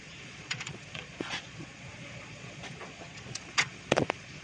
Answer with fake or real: fake